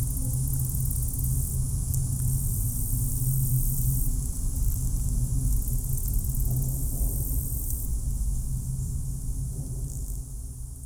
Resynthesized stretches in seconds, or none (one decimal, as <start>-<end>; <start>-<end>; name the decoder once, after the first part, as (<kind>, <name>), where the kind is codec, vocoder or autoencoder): none